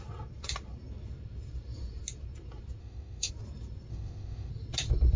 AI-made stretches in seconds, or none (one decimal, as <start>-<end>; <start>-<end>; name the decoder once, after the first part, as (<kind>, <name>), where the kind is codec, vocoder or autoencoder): 2.8-3.3 (autoencoder, DAC-VAE); 3.9-4.5